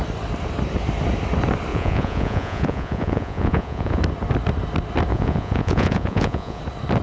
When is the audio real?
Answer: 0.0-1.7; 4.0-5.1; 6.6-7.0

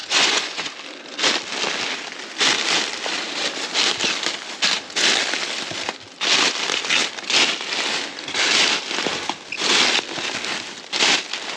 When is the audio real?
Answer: 0.7-11.6

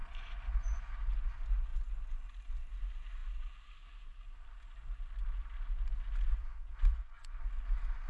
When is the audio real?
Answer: 0.9-6.3; 7.4-8.1

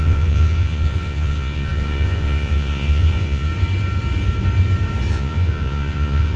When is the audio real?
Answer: 3.5-5.1

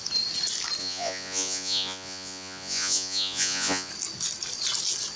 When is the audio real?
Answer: 0.0-0.8; 3.9-5.2